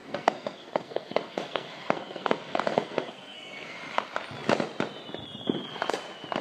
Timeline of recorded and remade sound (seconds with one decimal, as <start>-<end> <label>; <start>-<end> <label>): 0.0-3.8 remade; 3.8-6.4 recorded